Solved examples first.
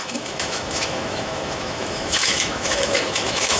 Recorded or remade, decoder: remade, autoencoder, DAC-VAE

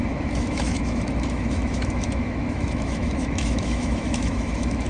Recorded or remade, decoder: remade, autoencoder, DAC-VAE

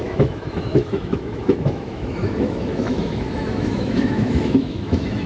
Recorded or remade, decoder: remade, autoencoder, DAC-VAE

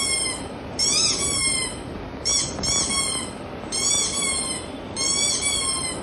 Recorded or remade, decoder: recorded